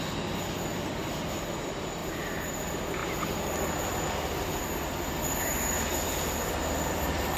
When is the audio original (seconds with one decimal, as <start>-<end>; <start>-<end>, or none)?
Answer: 0.0-2.0; 2.6-7.4